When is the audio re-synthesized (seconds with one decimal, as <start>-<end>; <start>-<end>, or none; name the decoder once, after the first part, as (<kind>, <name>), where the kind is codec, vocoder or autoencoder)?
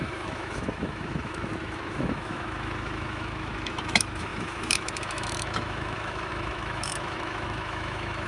0.0-8.3 (autoencoder, DAC-VAE)